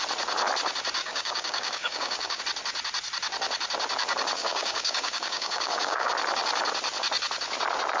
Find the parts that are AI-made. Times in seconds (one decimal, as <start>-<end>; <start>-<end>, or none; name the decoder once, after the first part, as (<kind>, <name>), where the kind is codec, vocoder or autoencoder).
1.0-2.4 (codec, DAC); 4.4-6.1

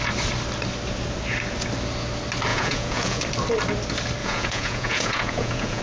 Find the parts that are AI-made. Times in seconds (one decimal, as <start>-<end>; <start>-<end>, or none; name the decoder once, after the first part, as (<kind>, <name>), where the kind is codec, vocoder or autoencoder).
2.5-3.2 (vocoder, Vocos); 4.2-5.8

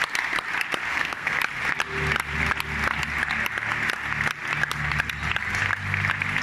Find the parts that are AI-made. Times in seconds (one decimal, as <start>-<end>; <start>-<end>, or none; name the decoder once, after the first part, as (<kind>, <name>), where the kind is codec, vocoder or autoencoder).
0.9-1.4 (codec, SNAC)